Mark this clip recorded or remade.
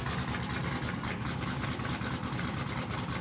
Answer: recorded